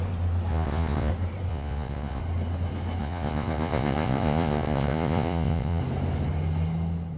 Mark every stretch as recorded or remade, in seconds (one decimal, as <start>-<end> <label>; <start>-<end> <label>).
0.0-0.5 recorded; 0.5-1.1 remade; 1.1-1.5 recorded; 1.5-2.2 remade; 2.2-3.0 recorded; 3.0-5.8 remade; 5.8-7.2 recorded